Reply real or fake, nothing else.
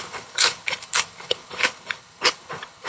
fake